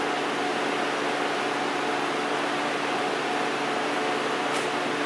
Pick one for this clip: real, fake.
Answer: real